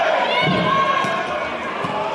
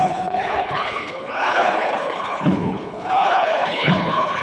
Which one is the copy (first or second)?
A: second